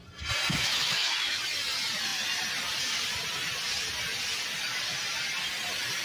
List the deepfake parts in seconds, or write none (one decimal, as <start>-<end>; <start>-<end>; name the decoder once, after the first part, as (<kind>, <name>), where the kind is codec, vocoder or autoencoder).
0.5-1.4 (autoencoder, DAC-VAE)